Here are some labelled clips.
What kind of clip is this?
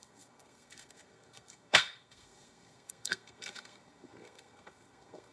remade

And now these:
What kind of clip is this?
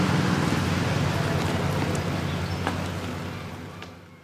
recorded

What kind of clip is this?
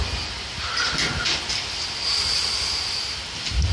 recorded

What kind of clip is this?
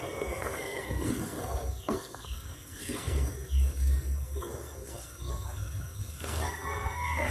remade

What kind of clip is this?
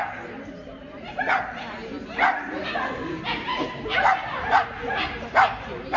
recorded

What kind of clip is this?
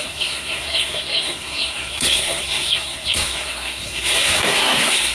remade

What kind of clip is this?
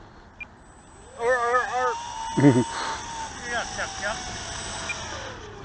recorded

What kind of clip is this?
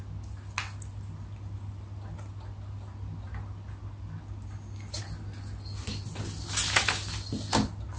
recorded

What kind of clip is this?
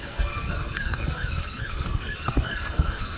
remade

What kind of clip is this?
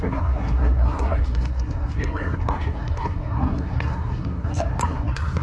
remade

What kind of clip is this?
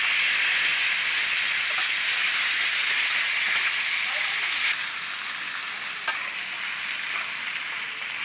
recorded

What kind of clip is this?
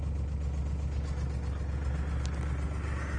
recorded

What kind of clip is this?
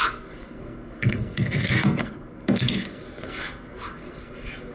remade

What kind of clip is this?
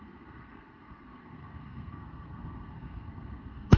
remade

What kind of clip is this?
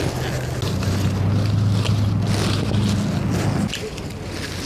recorded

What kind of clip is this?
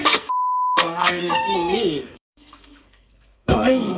remade